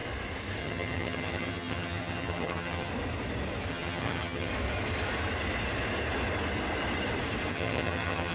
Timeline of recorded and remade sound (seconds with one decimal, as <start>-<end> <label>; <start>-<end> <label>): 0.0-0.6 recorded; 0.6-2.9 remade; 2.9-3.7 recorded; 3.7-4.5 remade; 4.5-7.5 recorded; 7.5-8.3 remade

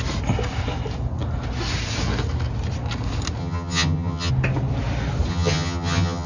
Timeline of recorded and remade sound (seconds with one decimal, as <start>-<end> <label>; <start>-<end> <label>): 0.0-3.4 recorded; 3.4-4.3 remade; 4.3-5.3 recorded; 5.3-6.3 remade

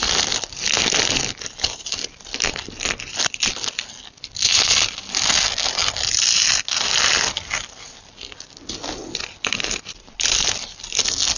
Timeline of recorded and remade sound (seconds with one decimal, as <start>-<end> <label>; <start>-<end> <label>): 0.0-11.4 recorded

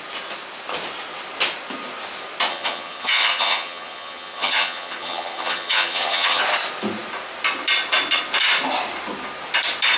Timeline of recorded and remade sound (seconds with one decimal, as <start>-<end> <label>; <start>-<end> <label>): 0.0-2.5 recorded; 2.5-6.4 remade; 6.4-10.0 recorded

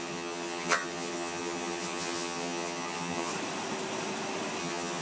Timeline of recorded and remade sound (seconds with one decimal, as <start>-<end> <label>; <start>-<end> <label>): 0.0-3.3 remade; 3.3-4.6 recorded; 4.6-5.0 remade

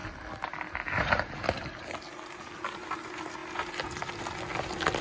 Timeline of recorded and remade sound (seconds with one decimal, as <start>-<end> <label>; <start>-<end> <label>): 0.0-5.0 recorded

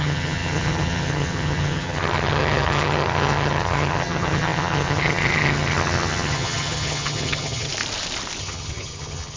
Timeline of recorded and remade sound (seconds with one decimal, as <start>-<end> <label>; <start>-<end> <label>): 0.0-7.7 remade; 7.7-8.4 recorded; 8.4-9.4 remade